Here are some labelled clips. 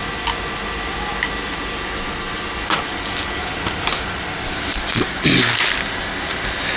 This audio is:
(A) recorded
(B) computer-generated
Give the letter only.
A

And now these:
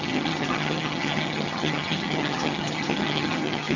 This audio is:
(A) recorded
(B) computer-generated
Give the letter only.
B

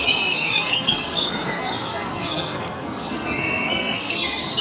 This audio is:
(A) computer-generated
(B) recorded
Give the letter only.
A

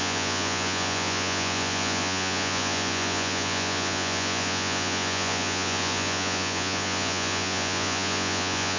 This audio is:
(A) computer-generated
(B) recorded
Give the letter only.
A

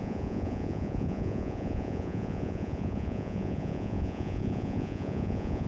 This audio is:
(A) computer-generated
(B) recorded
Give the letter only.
A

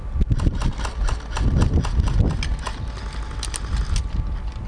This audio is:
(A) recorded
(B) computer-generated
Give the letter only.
A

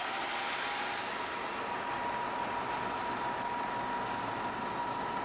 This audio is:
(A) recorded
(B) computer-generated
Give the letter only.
A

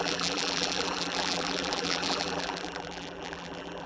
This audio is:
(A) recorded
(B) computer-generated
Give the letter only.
B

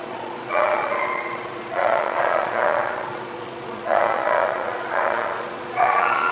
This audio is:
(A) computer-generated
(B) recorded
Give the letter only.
A